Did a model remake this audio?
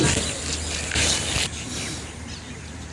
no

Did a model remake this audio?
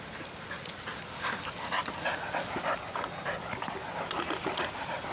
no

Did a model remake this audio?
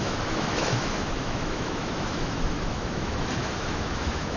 yes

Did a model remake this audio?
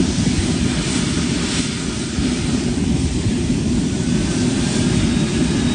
no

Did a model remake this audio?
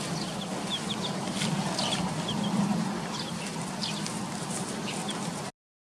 no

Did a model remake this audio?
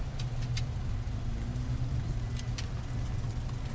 no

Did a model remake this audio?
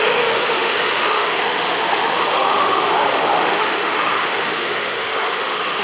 yes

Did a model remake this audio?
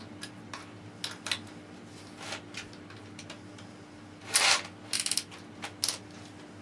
no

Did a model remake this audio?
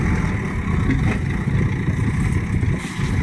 no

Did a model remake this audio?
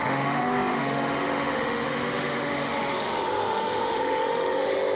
yes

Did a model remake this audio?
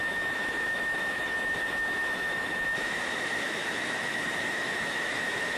yes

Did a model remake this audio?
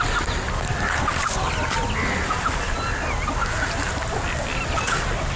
no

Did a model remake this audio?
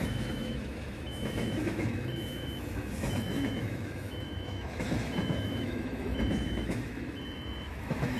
yes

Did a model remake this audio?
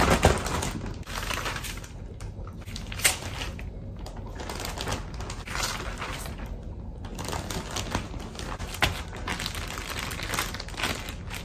no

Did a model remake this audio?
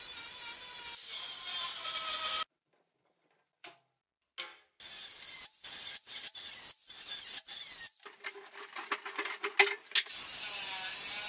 no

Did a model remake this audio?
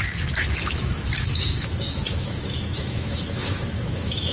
yes